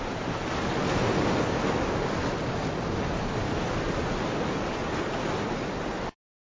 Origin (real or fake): real